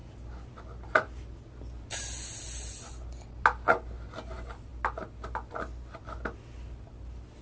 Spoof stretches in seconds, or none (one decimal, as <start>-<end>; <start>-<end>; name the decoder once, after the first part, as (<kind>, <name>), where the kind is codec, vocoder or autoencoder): none

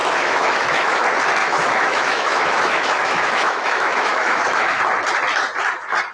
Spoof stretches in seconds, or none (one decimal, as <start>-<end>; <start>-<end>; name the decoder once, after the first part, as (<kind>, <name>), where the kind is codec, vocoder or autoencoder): 0.0-1.0 (autoencoder, DAC-VAE); 1.4-4.8

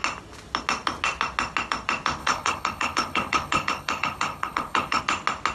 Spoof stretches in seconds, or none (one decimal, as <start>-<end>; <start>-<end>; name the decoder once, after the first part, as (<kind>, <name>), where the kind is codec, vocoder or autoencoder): 2.2-5.0 (codec, HILCodec)

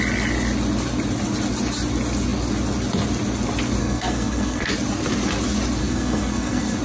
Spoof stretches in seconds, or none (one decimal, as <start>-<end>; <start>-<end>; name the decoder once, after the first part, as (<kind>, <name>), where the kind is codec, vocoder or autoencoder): 3.8-4.7 (codec, SNAC); 5.8-6.8

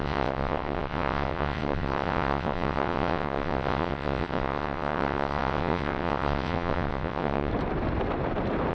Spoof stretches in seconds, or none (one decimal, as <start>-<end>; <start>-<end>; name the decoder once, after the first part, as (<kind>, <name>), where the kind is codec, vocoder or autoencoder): 0.0-7.5 (vocoder, WaveNeXt)

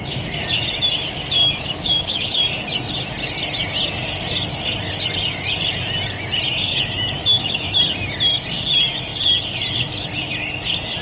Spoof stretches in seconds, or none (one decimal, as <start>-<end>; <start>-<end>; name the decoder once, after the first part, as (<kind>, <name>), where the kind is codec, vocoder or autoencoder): 1.4-2.4 (autoencoder, DAC-VAE); 6.7-7.8